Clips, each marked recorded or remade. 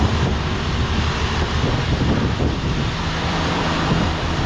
remade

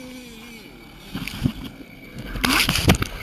recorded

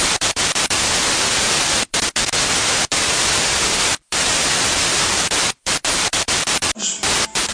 remade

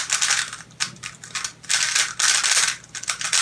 recorded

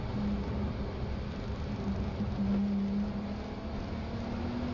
recorded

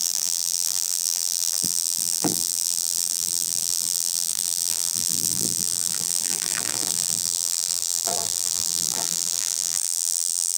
remade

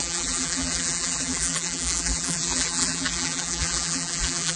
remade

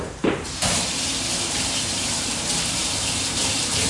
remade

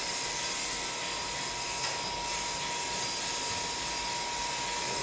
recorded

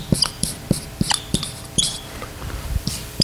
remade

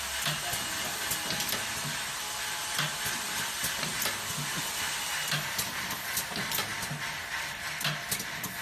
recorded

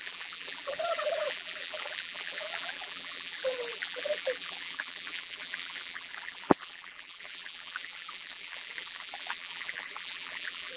remade